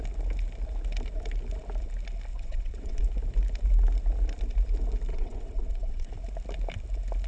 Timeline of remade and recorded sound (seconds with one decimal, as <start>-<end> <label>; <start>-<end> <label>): 0.0-2.3 recorded; 2.3-3.0 remade; 3.0-5.1 recorded; 5.1-6.1 remade; 6.1-7.3 recorded